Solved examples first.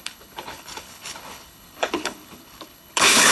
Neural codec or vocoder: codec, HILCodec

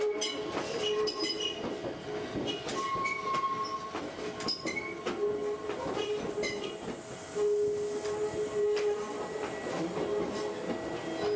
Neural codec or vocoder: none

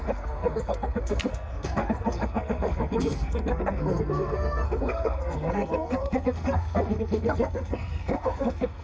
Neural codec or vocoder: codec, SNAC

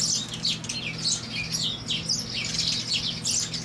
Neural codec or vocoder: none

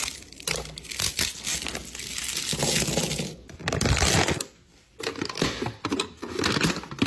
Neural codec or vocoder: none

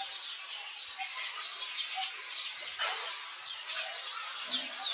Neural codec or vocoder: none